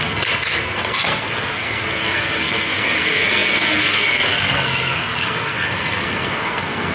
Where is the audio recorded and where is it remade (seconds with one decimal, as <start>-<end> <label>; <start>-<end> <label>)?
0.0-6.9 remade